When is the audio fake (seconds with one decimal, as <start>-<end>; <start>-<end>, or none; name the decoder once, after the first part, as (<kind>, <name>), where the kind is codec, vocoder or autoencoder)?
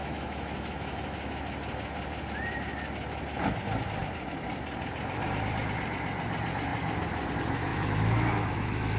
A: 0.0-1.4 (autoencoder, DAC-VAE); 7.7-9.0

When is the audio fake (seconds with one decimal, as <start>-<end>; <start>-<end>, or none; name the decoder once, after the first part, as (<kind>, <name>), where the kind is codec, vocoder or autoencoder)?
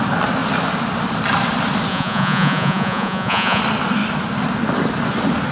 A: 1.9-3.6 (vocoder, Vocos)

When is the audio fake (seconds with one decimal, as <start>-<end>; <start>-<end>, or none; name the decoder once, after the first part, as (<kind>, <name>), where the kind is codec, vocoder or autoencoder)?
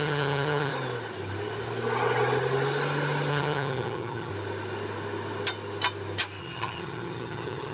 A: 0.0-0.7 (vocoder, HiFi-GAN); 3.3-4.3; 6.4-7.7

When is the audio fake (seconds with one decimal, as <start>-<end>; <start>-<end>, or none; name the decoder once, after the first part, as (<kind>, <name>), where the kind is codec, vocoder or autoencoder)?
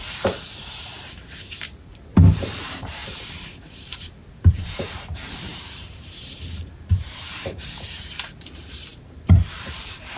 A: 0.0-10.2 (vocoder, BigVGAN v2)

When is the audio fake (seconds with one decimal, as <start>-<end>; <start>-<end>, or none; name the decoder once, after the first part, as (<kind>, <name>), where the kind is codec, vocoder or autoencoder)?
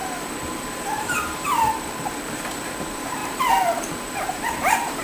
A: 0.0-5.0 (vocoder, BigVGAN v2)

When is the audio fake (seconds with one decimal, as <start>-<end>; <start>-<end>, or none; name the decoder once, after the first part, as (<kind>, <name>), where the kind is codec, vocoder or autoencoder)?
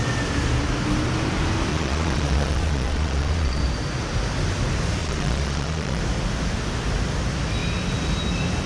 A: 1.7-3.6 (vocoder, Vocos); 5.0-6.0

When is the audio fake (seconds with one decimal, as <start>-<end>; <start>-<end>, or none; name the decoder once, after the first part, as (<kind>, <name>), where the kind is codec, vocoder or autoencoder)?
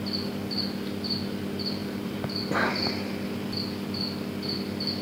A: 1.8-2.5 (vocoder, BigVGAN v2)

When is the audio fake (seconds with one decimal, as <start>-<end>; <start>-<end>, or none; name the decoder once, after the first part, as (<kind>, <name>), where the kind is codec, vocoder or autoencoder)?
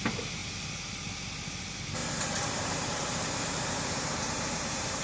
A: 2.0-5.0 (vocoder, BigVGAN v2)